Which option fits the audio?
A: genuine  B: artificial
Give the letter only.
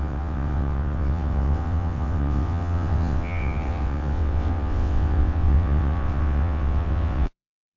B